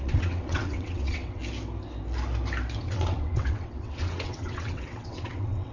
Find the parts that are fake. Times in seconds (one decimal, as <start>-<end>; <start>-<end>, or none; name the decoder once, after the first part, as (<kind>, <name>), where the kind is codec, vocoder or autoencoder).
0.0-1.4 (vocoder, WaveNeXt); 2.8-5.7